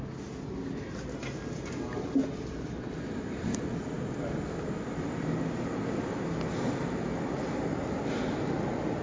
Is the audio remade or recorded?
recorded